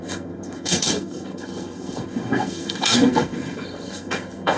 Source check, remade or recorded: remade